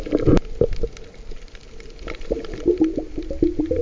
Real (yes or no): yes